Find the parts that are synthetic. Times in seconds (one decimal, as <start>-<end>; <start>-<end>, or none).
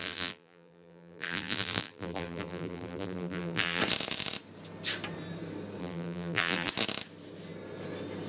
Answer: 0.0-3.8; 5.8-6.7